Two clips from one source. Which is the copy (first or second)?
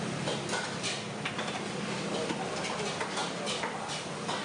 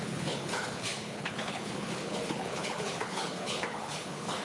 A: second